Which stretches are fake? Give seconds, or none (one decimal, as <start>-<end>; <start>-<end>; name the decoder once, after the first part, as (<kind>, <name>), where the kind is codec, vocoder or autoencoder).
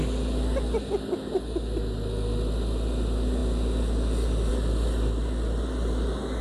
none